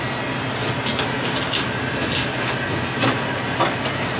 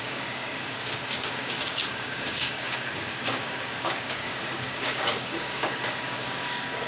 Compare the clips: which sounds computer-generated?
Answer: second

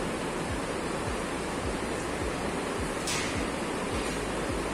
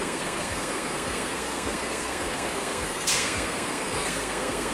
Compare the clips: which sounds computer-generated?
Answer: second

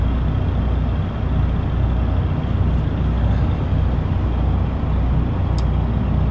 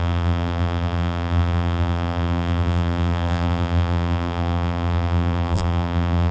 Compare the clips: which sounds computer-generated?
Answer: second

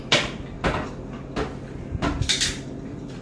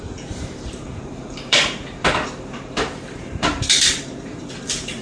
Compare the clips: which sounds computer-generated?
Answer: second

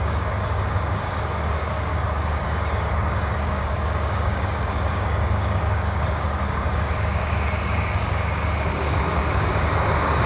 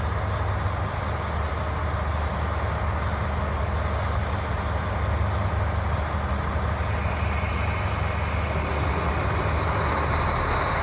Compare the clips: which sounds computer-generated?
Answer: first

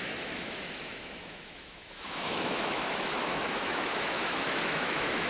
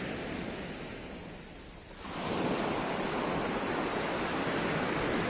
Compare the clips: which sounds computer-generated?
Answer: first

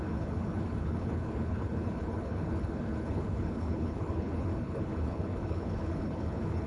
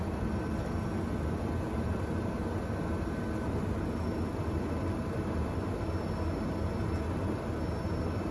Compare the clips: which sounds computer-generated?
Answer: first